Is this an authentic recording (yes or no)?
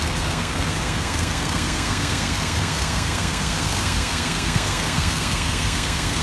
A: no